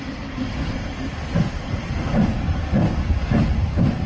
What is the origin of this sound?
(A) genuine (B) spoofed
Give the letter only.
B